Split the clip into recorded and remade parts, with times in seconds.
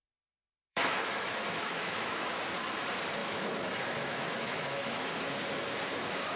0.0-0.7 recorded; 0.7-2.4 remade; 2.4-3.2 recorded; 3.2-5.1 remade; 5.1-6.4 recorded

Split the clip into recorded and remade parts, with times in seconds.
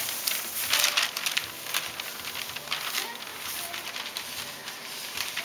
0.0-3.3 recorded; 3.3-4.0 remade; 4.0-4.6 recorded; 4.6-5.4 remade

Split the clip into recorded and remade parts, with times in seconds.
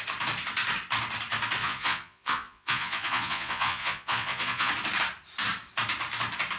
0.0-1.6 recorded; 1.6-4.7 remade; 4.7-6.6 recorded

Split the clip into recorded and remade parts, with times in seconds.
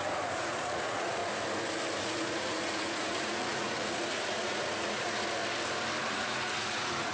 0.0-1.2 remade; 1.2-2.0 recorded; 2.0-5.4 remade; 5.4-6.1 recorded; 6.1-7.1 remade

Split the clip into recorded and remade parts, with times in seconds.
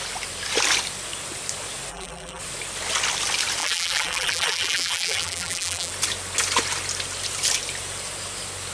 0.0-1.9 recorded; 1.9-2.4 remade; 2.4-3.6 recorded; 3.6-5.9 remade; 5.9-8.7 recorded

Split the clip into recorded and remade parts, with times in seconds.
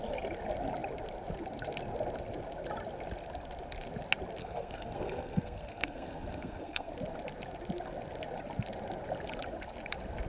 0.0-4.4 recorded; 4.4-6.9 remade; 6.9-10.3 recorded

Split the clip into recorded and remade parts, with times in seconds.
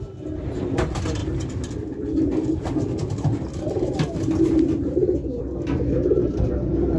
0.0-7.0 recorded